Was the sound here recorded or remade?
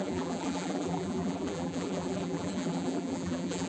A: remade